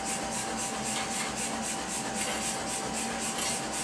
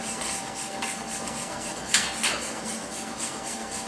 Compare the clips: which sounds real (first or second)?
first